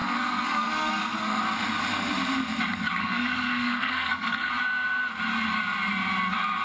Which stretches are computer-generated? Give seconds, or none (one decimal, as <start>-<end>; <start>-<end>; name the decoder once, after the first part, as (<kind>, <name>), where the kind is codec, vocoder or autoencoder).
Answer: 0.0-1.4 (codec, SNAC); 3.0-4.5